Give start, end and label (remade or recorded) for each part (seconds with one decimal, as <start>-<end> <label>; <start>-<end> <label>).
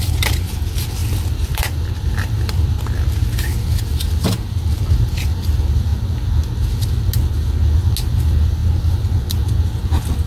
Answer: 0.0-1.0 recorded; 1.0-2.8 remade; 2.8-10.3 recorded